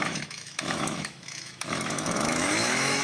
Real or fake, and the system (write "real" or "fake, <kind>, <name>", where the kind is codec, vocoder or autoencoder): fake, autoencoder, DAC-VAE